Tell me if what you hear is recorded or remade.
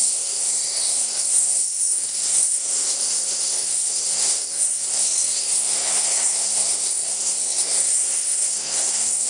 remade